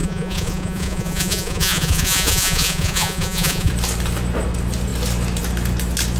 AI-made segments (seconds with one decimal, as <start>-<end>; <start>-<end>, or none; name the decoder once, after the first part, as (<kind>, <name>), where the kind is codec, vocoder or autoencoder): 0.0-3.7 (vocoder, Vocos)